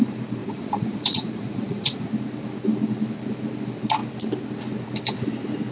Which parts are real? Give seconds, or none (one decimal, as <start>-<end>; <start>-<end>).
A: 0.0-0.4; 2.1-5.7